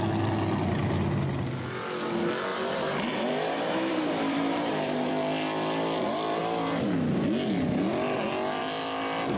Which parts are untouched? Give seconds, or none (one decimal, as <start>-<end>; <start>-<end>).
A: 0.0-2.5; 5.1-9.4